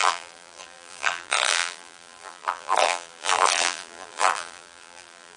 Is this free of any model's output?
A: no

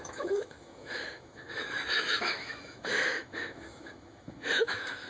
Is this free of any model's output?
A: no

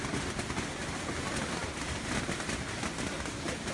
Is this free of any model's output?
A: yes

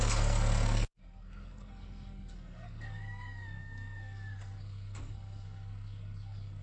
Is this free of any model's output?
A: no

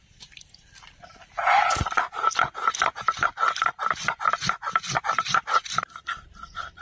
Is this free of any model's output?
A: yes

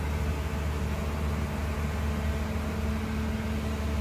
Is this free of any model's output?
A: yes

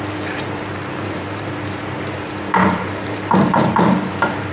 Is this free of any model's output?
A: no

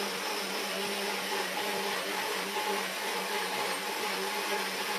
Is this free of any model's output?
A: yes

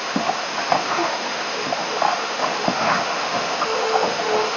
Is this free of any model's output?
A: no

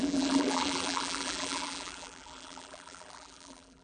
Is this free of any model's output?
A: no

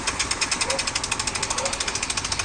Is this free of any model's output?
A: yes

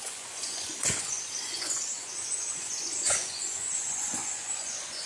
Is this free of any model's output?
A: no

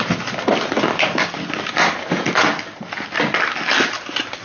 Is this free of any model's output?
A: yes